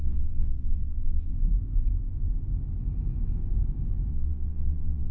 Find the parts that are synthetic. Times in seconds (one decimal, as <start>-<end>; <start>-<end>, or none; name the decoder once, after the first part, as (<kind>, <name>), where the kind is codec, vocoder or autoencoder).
0.0-1.3 (vocoder, WaveNeXt); 4.1-5.1